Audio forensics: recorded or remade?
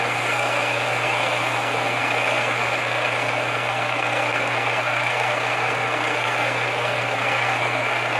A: remade